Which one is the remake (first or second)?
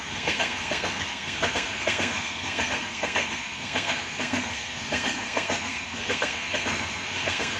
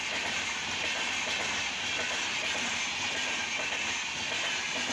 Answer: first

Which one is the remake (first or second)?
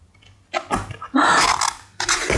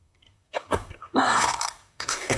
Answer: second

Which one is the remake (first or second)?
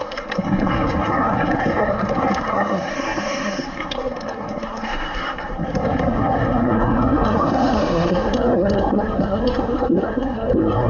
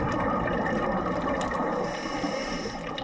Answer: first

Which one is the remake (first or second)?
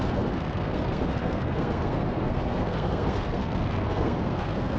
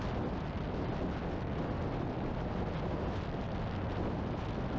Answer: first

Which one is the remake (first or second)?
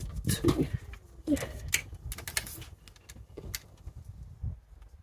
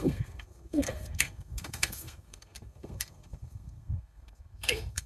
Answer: second